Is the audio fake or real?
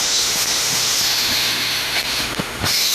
fake